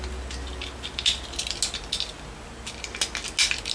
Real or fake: real